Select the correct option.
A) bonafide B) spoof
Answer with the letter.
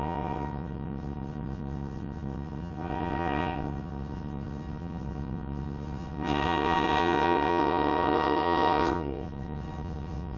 B